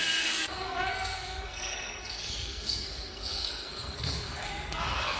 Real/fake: fake